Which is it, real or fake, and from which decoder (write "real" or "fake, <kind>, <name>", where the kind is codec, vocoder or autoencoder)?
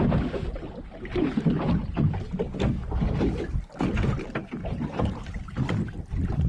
real